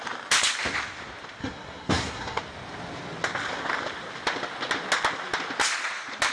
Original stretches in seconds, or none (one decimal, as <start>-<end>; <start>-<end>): 0.0-1.4; 2.4-6.3